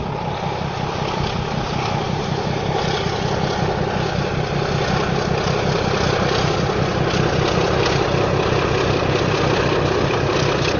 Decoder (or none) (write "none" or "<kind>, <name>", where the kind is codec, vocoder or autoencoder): none